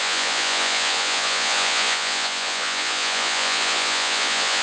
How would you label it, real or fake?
fake